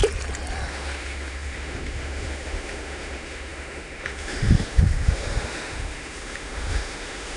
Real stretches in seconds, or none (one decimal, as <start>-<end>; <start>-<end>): 0.0-0.7